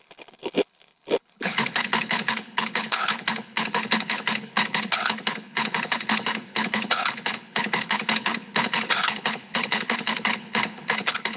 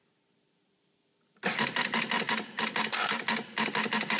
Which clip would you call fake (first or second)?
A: first